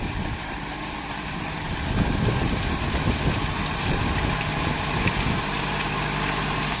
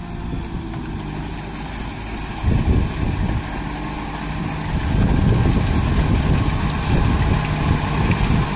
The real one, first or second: second